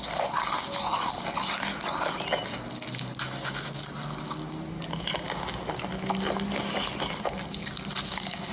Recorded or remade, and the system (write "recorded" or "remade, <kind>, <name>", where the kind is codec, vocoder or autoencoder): recorded